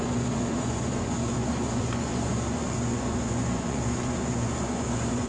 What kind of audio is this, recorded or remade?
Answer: remade